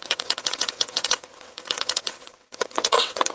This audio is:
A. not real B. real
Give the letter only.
A